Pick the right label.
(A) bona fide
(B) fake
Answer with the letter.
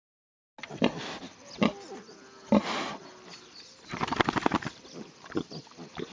A